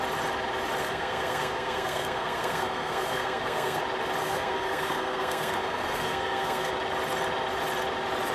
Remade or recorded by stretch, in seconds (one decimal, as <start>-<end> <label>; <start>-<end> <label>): 0.0-0.8 recorded; 0.8-3.8 remade; 3.8-4.2 recorded; 4.2-6.7 remade; 6.7-8.3 recorded